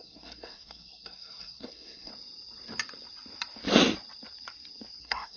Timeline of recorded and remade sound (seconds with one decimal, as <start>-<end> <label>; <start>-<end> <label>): 0.0-2.1 remade; 2.1-5.0 recorded; 5.0-5.4 remade